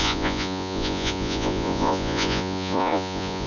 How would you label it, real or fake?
fake